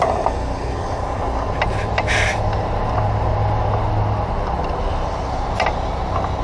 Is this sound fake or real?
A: real